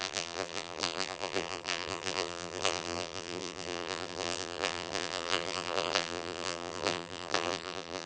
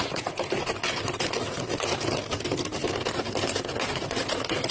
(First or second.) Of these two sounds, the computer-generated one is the first